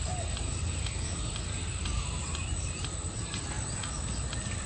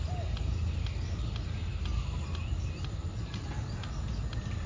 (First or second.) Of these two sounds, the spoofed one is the first